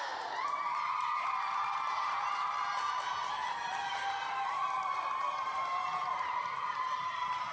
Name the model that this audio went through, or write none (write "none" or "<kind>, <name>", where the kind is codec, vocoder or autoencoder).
vocoder, BigVGAN v2